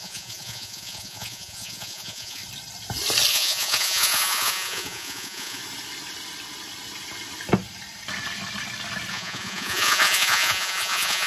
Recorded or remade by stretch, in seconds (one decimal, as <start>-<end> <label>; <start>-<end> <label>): 0.0-2.4 remade; 2.4-3.3 recorded; 3.3-5.6 remade; 5.6-9.1 recorded; 9.1-11.3 remade